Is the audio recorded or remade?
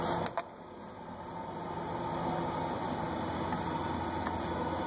recorded